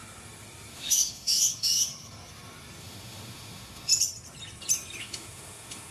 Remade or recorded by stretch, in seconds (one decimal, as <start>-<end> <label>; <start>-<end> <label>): 0.0-0.7 recorded; 0.7-1.9 remade; 1.9-2.8 recorded; 2.8-3.9 remade; 3.9-5.0 recorded; 5.0-5.9 remade